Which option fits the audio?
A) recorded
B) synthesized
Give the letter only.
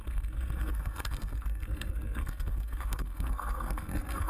B